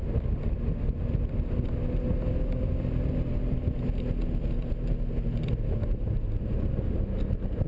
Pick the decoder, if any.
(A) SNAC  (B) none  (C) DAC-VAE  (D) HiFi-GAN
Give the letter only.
B